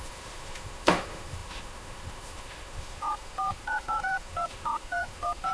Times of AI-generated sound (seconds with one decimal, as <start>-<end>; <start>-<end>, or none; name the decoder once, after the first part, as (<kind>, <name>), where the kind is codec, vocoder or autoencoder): 0.0-5.5 (autoencoder, DAC-VAE)